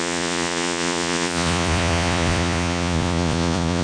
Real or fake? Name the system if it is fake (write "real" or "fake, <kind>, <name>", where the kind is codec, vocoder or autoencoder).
fake, vocoder, Vocos